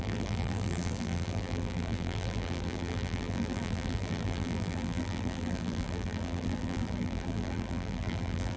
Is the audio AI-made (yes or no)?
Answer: yes